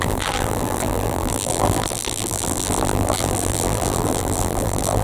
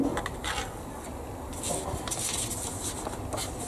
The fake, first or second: first